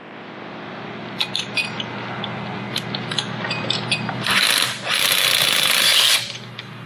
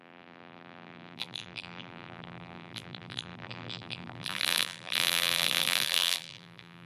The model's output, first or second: second